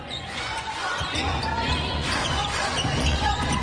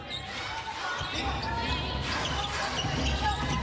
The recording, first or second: second